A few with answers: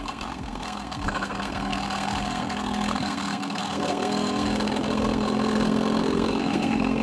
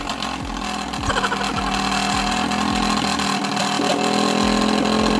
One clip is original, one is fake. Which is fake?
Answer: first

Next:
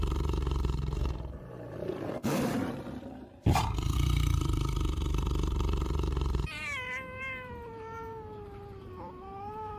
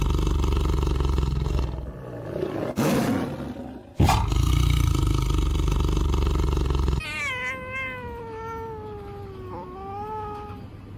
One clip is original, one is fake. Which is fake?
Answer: first